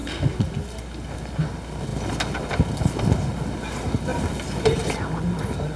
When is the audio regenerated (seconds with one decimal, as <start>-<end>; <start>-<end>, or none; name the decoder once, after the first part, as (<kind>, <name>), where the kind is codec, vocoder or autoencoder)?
none